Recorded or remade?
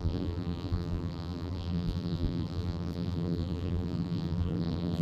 remade